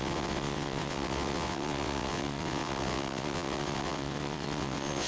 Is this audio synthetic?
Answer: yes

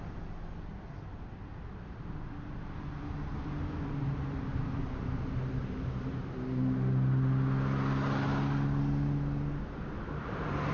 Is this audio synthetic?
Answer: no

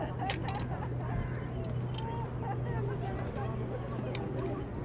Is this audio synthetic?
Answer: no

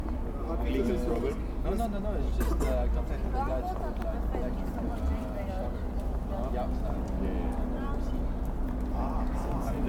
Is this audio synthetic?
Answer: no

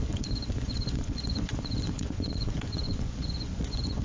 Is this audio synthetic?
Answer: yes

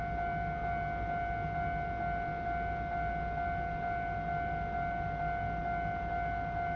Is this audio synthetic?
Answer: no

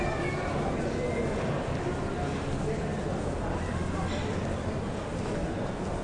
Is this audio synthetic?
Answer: no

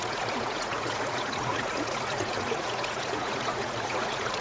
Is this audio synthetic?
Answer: yes